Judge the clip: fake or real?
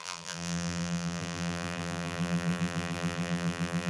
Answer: fake